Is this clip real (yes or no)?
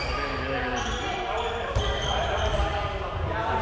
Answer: yes